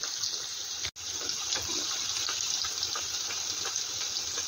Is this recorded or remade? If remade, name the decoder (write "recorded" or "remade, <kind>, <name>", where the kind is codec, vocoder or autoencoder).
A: recorded